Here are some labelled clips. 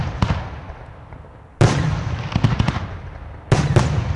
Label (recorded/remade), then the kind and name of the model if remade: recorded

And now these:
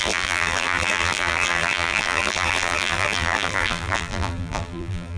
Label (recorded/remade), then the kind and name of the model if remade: remade, vocoder, BigVGAN v2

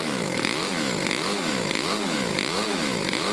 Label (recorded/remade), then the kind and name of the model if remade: remade, autoencoder, DAC-VAE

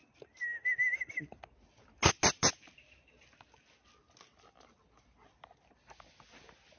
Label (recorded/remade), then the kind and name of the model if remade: recorded